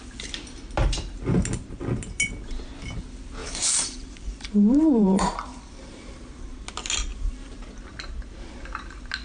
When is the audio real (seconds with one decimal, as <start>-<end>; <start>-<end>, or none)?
0.0-3.4; 6.3-7.1; 7.7-9.2